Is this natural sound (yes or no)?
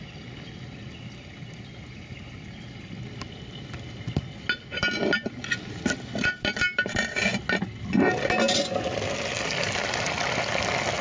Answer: yes